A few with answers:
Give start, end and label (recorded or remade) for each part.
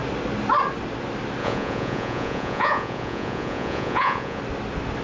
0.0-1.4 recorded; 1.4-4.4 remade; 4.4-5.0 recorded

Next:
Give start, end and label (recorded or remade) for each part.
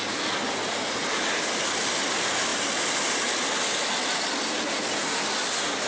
0.0-5.9 recorded